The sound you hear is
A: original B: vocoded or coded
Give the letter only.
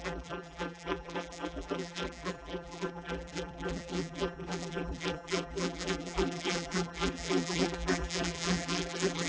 B